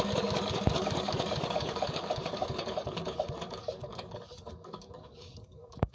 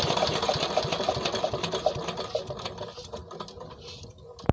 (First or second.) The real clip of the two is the second